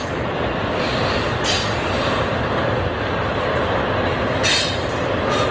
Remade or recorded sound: recorded